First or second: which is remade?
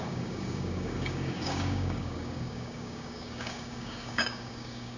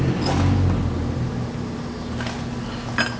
first